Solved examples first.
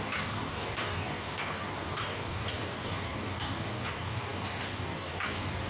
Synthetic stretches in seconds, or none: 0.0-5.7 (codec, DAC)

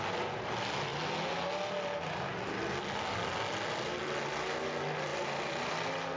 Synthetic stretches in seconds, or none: none

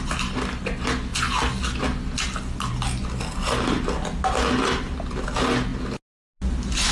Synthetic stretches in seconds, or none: none